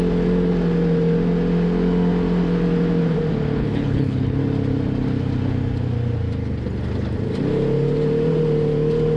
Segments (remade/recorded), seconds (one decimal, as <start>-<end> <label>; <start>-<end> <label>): 0.0-3.6 recorded; 3.6-4.4 remade; 4.4-9.2 recorded